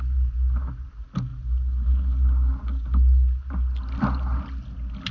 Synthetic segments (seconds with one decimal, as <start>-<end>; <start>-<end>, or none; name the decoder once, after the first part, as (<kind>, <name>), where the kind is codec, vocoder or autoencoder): none